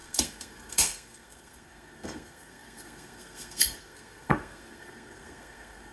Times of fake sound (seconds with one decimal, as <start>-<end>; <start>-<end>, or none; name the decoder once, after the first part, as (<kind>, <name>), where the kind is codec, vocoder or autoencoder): 0.0-5.9 (codec, SNAC)